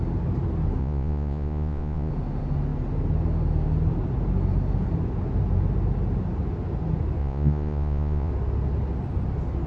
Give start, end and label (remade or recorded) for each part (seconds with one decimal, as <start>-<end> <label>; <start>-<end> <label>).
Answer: 0.0-0.8 recorded; 0.8-2.1 remade; 2.1-7.2 recorded; 7.2-8.3 remade; 8.3-9.7 recorded